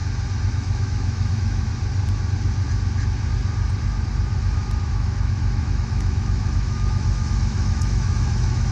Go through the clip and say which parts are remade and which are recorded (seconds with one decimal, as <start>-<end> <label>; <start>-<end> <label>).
0.0-0.5 recorded; 0.5-1.7 remade; 1.7-4.8 recorded; 4.8-8.7 remade